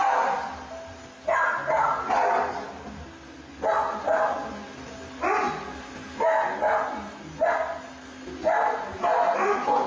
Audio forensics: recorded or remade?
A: recorded